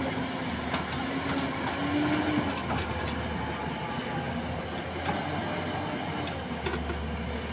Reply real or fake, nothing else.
real